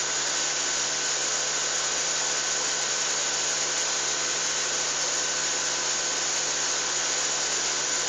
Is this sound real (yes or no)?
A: yes